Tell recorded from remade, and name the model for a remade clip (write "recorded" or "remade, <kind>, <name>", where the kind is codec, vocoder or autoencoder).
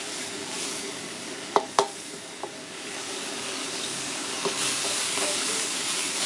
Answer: remade, codec, DAC